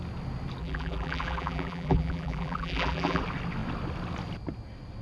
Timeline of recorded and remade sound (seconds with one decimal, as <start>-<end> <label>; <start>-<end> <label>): 0.0-0.6 recorded; 0.6-3.2 remade; 3.2-5.0 recorded